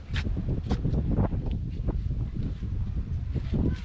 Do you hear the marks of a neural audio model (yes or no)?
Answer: no